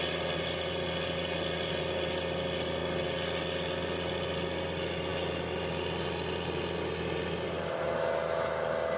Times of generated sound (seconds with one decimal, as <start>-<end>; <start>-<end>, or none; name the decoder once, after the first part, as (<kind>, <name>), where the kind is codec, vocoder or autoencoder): none